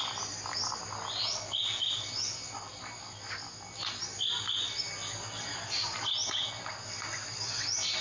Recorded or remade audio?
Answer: recorded